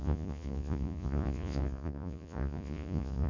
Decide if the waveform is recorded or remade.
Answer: remade